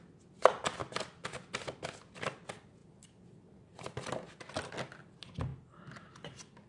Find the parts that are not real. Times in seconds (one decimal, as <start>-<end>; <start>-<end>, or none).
none